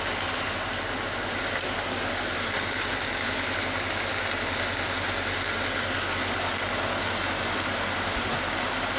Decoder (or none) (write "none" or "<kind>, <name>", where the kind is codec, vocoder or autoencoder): none